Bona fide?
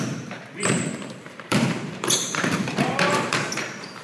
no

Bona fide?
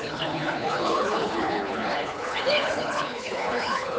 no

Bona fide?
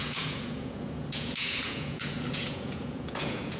no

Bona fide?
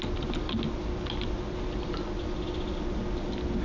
yes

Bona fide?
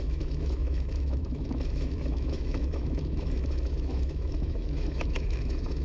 no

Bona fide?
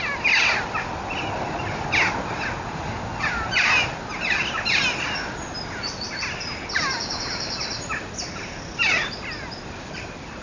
yes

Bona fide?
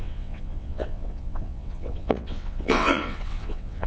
no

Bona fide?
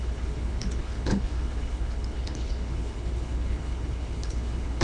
no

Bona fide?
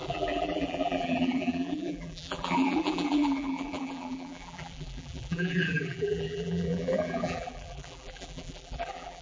no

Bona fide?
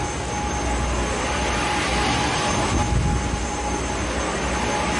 yes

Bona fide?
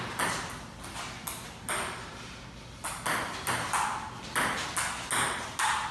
yes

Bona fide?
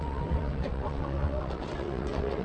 no